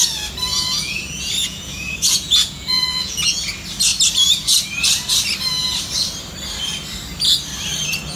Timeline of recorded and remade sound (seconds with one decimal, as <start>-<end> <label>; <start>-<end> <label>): 0.0-0.5 recorded; 0.5-3.5 remade; 3.5-8.2 recorded